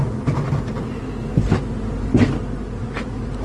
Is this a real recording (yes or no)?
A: yes